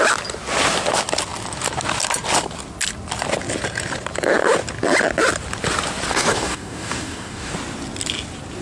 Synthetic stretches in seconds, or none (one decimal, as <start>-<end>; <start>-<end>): 6.1-7.5